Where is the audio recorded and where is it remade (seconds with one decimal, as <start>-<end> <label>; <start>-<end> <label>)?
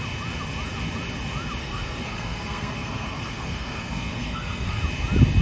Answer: 0.0-1.6 recorded; 1.6-4.8 remade; 4.8-5.4 recorded